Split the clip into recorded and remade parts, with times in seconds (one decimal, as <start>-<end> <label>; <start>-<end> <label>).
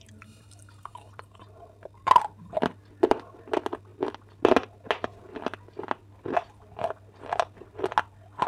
0.0-0.9 recorded; 0.9-3.5 remade; 3.5-8.5 recorded